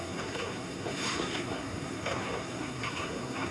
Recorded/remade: remade